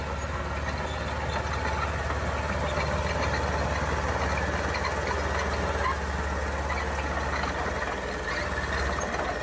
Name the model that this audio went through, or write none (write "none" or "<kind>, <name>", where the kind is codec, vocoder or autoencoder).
none